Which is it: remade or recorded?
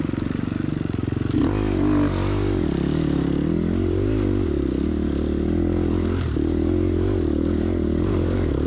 recorded